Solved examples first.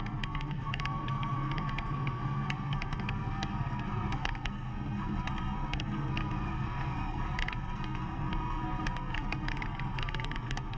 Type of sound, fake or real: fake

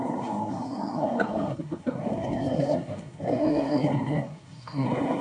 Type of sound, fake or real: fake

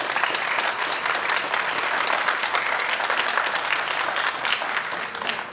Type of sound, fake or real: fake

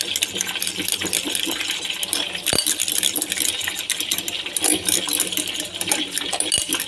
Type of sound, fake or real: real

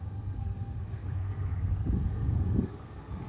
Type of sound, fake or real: fake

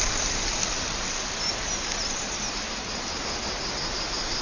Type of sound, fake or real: real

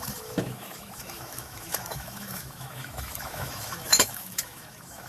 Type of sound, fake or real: fake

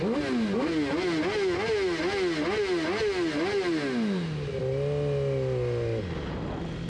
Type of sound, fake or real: real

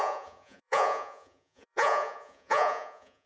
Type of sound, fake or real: fake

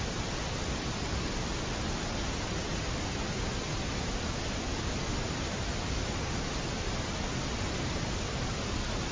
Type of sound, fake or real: real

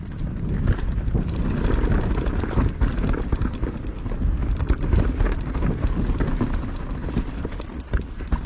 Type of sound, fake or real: real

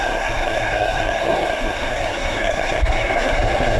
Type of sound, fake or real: fake